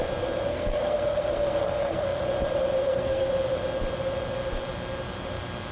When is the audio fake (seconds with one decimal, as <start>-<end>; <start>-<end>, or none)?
0.5-2.2; 2.8-3.3

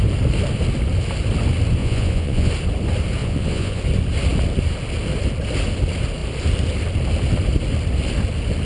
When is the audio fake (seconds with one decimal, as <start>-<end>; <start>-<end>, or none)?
1.8-2.5; 3.2-3.8

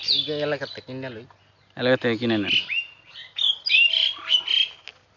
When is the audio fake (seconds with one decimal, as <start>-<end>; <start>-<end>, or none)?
none

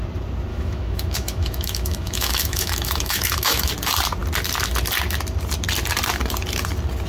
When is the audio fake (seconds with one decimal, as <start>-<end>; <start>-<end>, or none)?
0.5-3.7

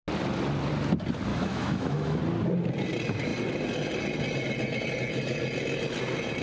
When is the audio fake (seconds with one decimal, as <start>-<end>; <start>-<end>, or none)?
1.3-2.2

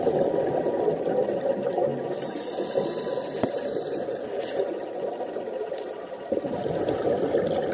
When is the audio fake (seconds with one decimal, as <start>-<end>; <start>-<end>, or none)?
none

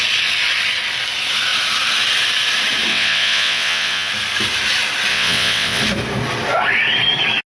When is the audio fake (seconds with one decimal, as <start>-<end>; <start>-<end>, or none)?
2.9-4.1; 5.1-5.8